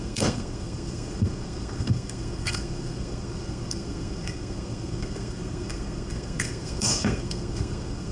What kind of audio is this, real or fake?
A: fake